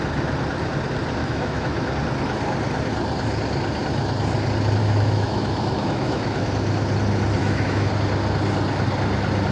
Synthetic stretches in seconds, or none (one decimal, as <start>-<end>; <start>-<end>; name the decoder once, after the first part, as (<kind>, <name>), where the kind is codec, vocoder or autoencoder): 1.2-1.9 (autoencoder, DAC-VAE); 4.8-6.5; 7.4-7.9